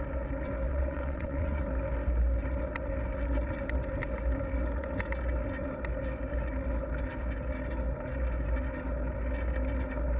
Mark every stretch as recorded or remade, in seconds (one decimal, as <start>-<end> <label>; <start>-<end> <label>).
0.0-0.7 recorded; 0.7-1.6 remade; 1.6-10.2 recorded